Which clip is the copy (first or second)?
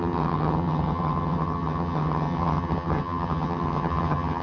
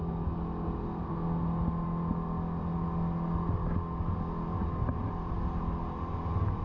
first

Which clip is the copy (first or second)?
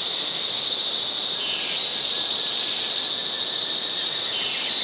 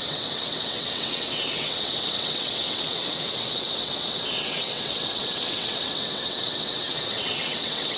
second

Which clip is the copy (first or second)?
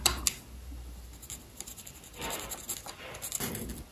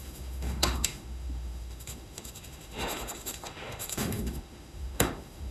second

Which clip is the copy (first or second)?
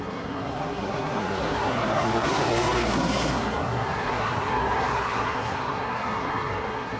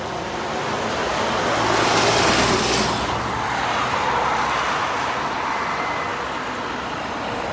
first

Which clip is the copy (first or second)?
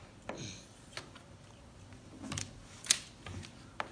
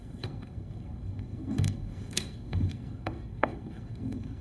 second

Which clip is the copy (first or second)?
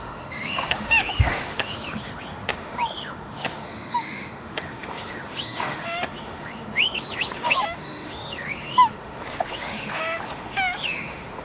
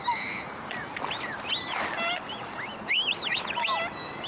first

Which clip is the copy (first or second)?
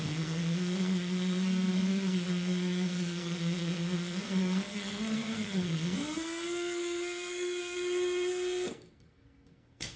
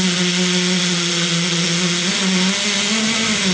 first